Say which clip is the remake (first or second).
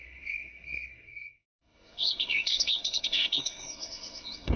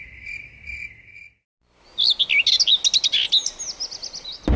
first